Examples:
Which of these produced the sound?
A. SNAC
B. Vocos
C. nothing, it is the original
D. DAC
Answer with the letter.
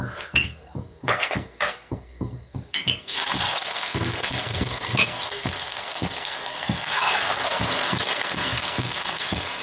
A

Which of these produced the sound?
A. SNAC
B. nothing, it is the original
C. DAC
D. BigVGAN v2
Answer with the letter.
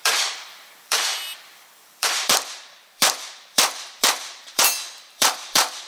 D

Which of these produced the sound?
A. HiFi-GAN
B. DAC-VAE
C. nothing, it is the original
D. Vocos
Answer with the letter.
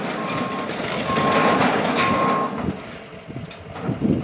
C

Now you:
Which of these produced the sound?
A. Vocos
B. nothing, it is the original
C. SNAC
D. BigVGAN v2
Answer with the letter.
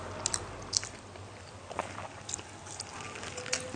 B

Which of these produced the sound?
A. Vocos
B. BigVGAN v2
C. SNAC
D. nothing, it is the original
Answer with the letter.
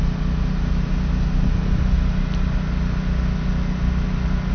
D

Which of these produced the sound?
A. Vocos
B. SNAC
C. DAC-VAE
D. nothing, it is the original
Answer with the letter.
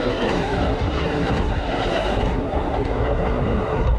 B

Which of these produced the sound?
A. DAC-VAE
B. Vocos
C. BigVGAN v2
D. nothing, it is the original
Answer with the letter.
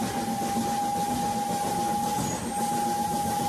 D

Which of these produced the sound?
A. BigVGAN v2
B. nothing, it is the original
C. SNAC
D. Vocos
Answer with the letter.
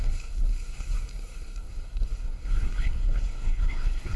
C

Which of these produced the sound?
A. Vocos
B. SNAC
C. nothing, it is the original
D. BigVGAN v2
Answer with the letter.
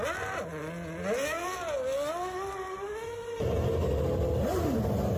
C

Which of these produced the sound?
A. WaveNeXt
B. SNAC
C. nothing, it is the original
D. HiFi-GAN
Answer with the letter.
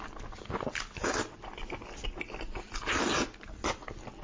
C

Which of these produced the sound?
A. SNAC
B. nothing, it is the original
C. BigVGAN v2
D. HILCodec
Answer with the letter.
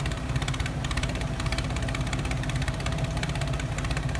C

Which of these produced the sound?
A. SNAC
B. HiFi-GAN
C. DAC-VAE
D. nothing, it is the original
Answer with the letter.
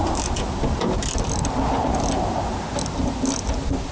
D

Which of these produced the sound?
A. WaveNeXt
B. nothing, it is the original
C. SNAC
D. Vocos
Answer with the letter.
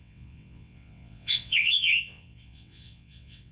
A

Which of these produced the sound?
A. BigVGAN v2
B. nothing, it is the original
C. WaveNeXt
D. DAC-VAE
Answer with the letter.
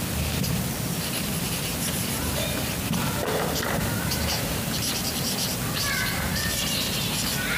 A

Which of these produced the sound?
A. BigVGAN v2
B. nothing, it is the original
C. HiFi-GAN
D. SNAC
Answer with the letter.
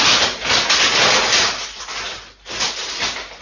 B